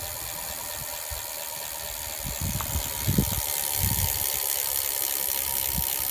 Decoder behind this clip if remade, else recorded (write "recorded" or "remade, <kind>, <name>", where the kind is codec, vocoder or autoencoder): recorded